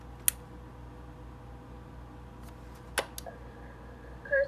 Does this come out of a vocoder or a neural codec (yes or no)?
no